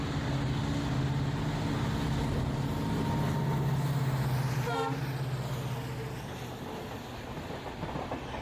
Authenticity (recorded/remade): recorded